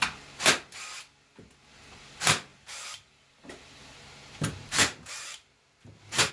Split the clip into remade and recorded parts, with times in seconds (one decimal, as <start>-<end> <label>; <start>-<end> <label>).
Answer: 0.0-2.5 recorded; 2.5-6.3 remade